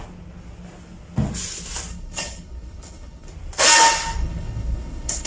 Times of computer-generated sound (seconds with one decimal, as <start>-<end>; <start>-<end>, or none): 1.9-3.3; 4.2-5.3